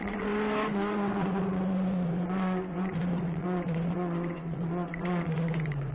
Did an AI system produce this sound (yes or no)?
yes